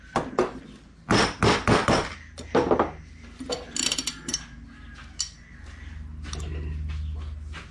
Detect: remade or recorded recorded